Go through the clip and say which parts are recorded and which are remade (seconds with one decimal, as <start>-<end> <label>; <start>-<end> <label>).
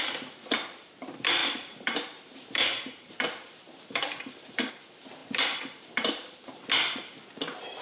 0.0-1.4 recorded; 1.4-4.7 remade; 4.7-5.2 recorded; 5.2-6.7 remade; 6.7-7.8 recorded